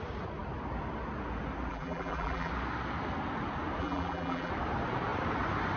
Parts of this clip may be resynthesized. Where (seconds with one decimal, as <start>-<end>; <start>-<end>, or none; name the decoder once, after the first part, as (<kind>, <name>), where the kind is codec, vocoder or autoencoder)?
1.7-2.5 (vocoder, BigVGAN v2); 3.8-4.5